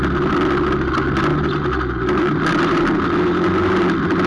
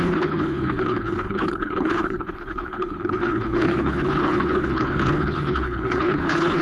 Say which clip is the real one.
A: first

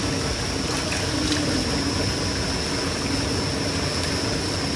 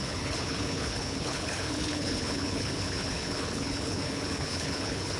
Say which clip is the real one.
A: first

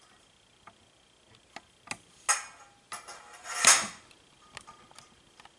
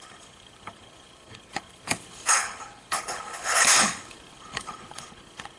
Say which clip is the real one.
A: first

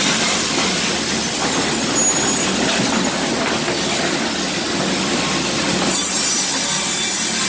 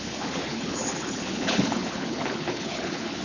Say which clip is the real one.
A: first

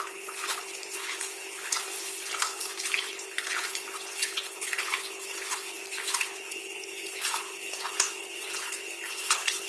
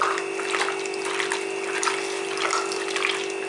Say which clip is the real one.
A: second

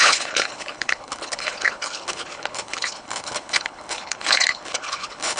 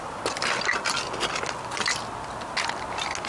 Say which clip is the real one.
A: second